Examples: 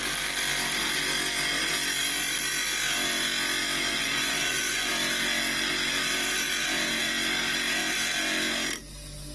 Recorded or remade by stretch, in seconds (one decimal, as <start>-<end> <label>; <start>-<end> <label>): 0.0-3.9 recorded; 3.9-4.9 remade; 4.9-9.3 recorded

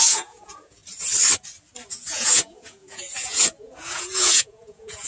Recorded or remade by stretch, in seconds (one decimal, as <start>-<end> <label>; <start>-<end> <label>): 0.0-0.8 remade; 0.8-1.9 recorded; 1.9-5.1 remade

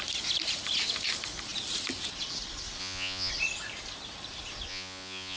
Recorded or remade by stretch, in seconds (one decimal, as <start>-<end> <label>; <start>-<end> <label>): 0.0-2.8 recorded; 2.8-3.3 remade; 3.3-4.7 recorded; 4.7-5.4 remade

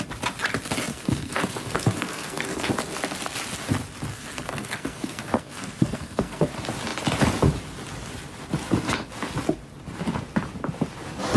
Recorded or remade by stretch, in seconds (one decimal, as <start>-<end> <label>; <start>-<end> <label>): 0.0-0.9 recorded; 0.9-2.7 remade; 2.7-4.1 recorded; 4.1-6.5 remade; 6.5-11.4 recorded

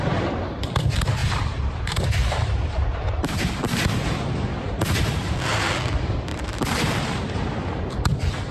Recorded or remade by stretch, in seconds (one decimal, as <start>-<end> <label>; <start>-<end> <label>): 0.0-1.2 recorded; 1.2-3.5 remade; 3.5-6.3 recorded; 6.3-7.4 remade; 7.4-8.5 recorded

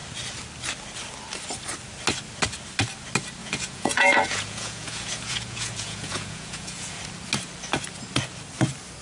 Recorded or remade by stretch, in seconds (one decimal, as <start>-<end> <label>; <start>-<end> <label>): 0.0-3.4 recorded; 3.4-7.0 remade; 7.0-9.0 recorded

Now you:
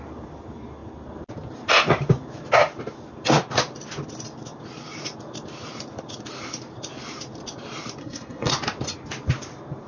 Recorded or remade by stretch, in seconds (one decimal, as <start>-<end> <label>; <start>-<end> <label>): 0.0-8.0 recorded; 8.0-8.5 remade; 8.5-9.9 recorded